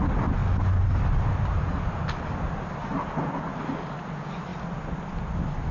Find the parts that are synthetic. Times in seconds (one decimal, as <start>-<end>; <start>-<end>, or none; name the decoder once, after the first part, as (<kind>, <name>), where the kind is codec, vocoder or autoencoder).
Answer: none